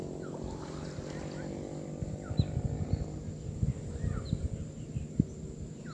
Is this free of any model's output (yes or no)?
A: yes